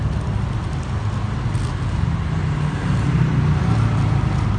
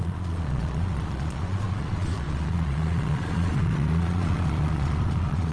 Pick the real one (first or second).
first